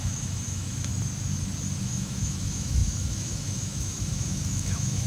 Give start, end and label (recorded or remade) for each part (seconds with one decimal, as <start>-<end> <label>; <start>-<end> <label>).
0.0-0.9 remade; 0.9-1.8 recorded; 1.8-5.1 remade